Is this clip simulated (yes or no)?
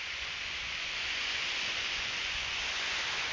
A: yes